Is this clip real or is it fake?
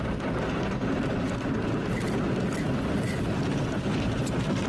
real